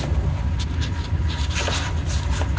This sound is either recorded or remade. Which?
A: recorded